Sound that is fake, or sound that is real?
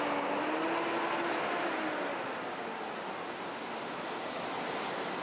real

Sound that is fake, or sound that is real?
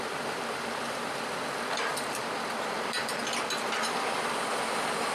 fake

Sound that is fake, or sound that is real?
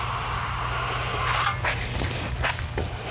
real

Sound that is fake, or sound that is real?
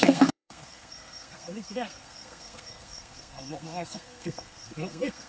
fake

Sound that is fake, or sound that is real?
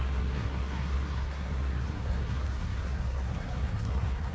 fake